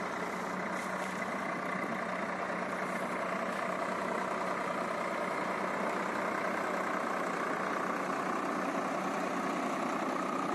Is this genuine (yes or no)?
yes